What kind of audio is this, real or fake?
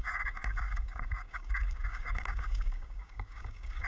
fake